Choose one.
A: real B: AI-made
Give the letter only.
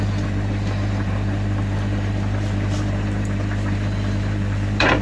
B